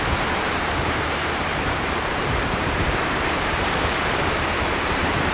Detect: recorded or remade remade